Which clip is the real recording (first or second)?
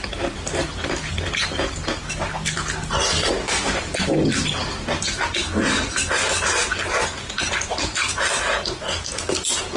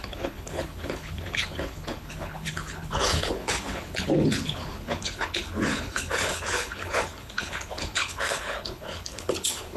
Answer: first